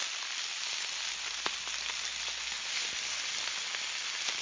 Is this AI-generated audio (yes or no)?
no